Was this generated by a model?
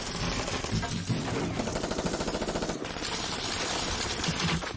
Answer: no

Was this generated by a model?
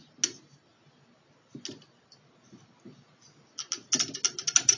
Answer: no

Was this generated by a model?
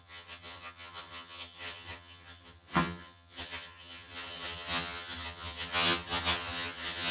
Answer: yes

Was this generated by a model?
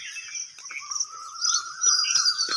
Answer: no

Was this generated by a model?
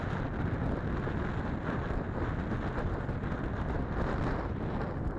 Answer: no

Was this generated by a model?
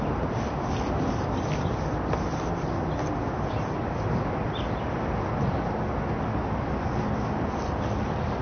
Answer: no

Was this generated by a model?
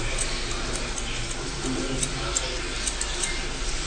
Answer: no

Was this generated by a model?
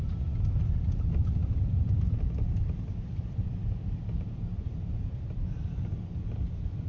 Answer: no